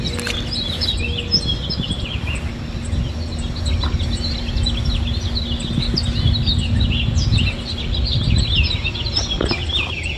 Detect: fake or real real